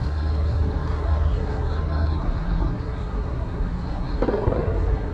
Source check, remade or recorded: remade